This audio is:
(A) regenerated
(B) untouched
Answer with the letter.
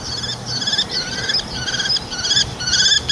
B